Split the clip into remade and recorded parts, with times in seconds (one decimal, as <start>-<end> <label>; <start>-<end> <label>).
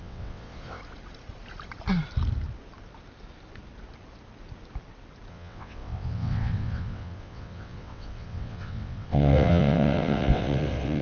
0.0-0.8 remade; 0.8-5.3 recorded; 5.3-11.0 remade